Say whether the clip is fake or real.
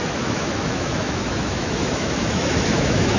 fake